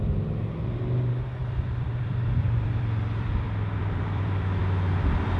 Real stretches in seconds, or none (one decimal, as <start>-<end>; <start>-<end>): 0.0-1.4; 4.6-5.4